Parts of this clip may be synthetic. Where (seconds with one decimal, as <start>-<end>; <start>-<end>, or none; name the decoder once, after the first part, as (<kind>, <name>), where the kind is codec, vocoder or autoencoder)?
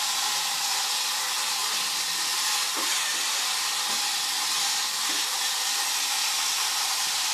none